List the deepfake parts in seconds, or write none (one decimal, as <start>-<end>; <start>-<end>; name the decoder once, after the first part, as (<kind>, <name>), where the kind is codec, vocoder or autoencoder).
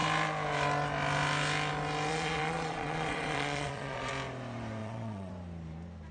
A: 2.1-4.1 (vocoder, Vocos); 4.8-5.3